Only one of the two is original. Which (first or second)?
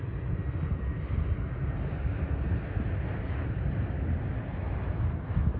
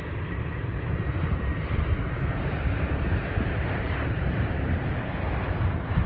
first